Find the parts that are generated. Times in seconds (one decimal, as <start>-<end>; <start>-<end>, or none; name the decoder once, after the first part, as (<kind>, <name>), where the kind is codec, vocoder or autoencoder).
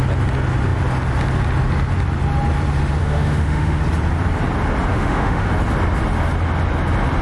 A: 3.0-3.8 (autoencoder, DAC-VAE); 4.9-5.5